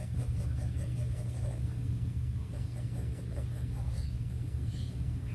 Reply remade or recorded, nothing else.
remade